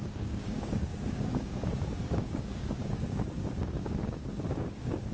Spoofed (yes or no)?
yes